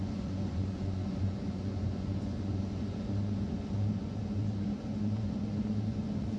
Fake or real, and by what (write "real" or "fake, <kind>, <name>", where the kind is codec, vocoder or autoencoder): fake, vocoder, Vocos